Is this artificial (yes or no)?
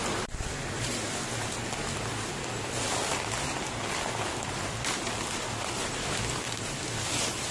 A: no